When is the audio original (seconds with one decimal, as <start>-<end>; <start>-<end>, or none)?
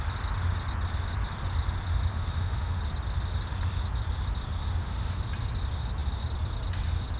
0.0-2.1; 2.8-4.6; 5.2-7.2